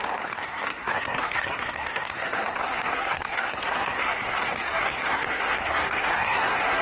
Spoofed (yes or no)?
yes